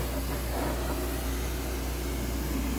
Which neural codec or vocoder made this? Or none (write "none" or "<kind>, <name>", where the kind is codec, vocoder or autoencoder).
none